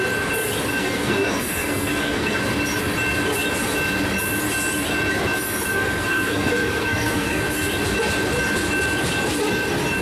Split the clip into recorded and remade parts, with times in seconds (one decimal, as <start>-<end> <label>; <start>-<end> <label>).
0.0-0.7 recorded; 0.7-2.4 remade; 2.4-5.7 recorded; 5.7-7.4 remade; 7.4-10.0 recorded